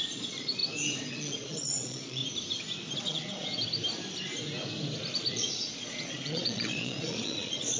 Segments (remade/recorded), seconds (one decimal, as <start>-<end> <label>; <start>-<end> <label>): 0.0-0.6 remade; 0.6-1.1 recorded; 1.1-2.2 remade; 2.2-3.0 recorded; 3.0-3.5 remade; 3.5-5.3 recorded; 5.3-7.8 remade